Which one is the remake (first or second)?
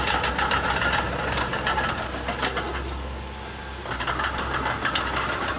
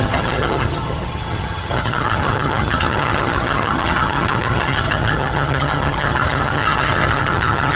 second